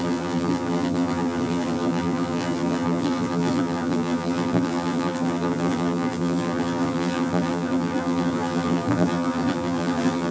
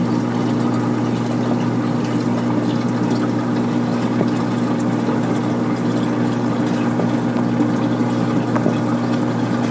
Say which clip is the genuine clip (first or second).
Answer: second